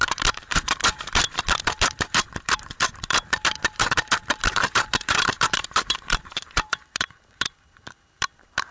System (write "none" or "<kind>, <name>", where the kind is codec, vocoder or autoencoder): vocoder, BigVGAN v2